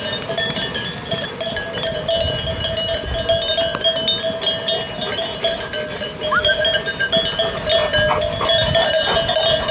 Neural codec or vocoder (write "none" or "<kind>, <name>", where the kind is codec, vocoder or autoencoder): none